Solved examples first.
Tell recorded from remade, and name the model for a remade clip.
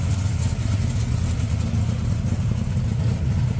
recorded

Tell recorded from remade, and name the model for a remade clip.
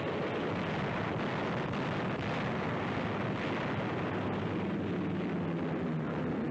recorded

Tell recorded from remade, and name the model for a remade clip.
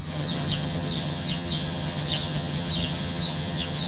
remade, vocoder, HiFi-GAN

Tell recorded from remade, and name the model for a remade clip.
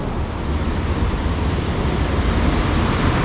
recorded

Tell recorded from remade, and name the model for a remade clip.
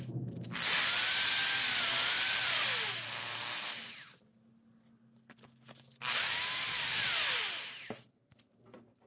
recorded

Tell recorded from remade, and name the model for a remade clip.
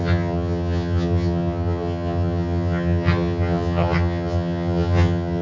remade, vocoder, HiFi-GAN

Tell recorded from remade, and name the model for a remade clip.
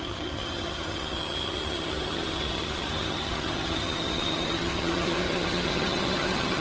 remade, vocoder, HiFi-GAN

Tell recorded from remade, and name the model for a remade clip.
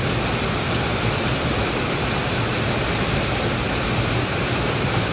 recorded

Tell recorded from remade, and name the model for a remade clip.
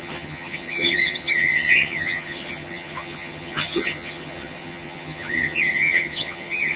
remade, vocoder, HiFi-GAN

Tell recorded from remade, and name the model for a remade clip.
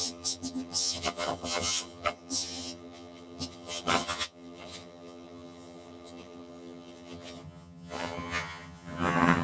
remade, vocoder, HiFi-GAN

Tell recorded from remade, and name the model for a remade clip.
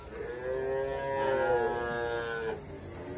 recorded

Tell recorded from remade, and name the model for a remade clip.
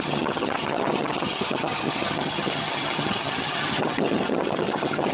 remade, vocoder, HiFi-GAN